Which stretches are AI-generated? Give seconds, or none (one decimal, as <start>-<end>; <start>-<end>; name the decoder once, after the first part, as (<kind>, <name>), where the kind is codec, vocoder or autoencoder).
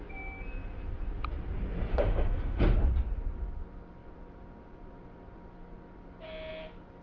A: 1.9-2.6 (autoencoder, DAC-VAE)